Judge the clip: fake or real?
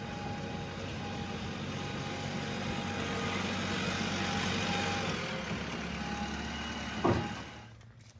real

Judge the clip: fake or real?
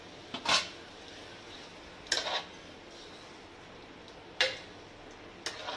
real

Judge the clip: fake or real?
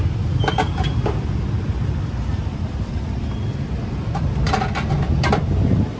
real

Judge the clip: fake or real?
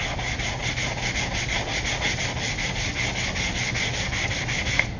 real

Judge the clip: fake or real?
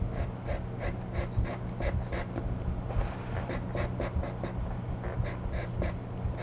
real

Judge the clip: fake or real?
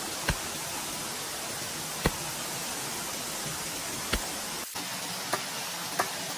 real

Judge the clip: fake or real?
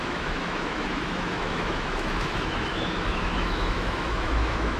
fake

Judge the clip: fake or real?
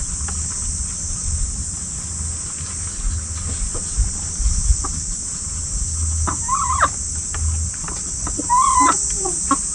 real